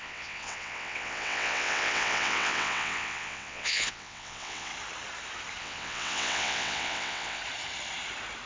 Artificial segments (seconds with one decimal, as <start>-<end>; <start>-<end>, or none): 0.0-4.7; 5.6-7.4